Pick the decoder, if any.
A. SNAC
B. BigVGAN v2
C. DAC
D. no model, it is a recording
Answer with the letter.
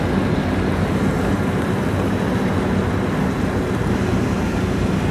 D